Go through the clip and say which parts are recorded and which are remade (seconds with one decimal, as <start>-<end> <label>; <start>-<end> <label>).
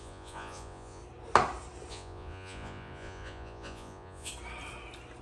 0.0-1.0 remade; 1.0-1.9 recorded; 1.9-4.3 remade; 4.3-5.2 recorded